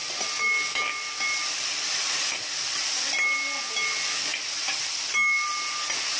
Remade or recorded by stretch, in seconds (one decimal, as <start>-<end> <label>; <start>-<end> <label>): 0.0-6.2 recorded